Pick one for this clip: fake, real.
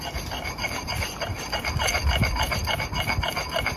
real